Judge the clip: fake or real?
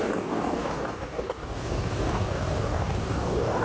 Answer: fake